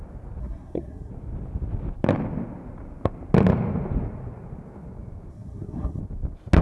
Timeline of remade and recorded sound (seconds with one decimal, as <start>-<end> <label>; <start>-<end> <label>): 0.0-0.4 recorded; 0.4-1.1 remade; 1.1-5.3 recorded; 5.3-6.0 remade; 6.0-6.6 recorded

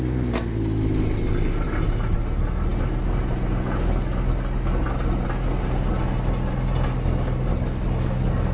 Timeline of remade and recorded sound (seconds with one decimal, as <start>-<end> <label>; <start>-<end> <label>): 0.0-8.5 recorded

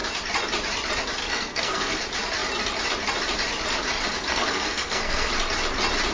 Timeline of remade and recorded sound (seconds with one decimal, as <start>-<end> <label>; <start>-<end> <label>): 0.0-1.2 recorded; 1.2-2.0 remade; 2.0-4.3 recorded; 4.3-5.3 remade; 5.3-6.1 recorded

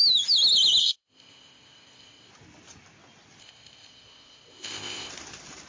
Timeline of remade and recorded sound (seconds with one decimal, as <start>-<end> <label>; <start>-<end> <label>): 0.0-0.8 recorded; 0.8-2.3 remade; 2.3-3.4 recorded; 3.4-5.1 remade; 5.1-5.7 recorded

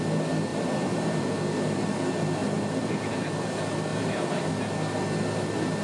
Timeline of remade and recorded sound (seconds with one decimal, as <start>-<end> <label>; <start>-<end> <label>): 0.0-0.5 recorded; 0.5-1.2 remade; 1.2-2.4 recorded; 2.4-3.1 remade; 3.1-3.9 recorded; 3.9-4.5 remade; 4.5-5.8 recorded

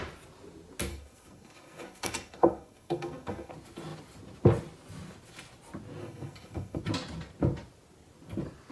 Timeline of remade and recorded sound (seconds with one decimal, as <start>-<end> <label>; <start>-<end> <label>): 0.0-0.9 recorded; 0.9-3.5 remade; 3.5-6.0 recorded; 6.0-6.8 remade; 6.8-8.7 recorded